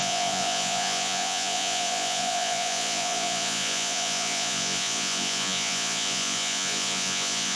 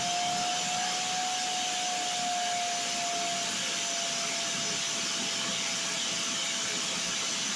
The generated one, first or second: first